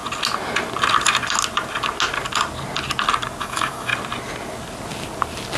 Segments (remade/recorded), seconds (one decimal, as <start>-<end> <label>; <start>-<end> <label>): 0.0-3.4 recorded; 3.4-3.9 remade; 3.9-5.6 recorded